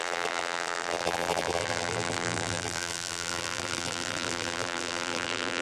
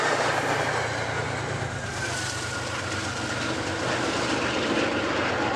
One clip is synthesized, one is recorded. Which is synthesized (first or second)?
first